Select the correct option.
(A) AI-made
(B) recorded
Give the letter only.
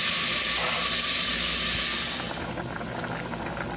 B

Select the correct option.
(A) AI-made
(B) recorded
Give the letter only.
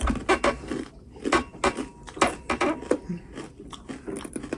B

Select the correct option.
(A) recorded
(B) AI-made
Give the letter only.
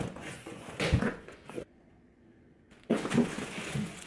B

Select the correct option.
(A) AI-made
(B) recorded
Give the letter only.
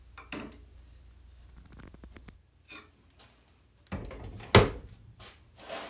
B